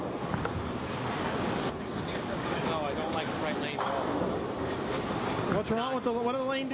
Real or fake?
real